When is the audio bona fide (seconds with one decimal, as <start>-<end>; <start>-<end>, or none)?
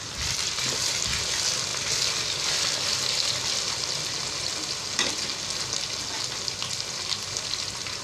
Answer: 0.0-8.0